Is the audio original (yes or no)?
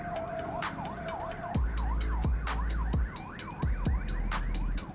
yes